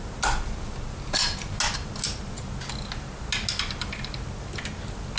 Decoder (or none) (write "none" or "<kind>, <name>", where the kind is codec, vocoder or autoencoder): none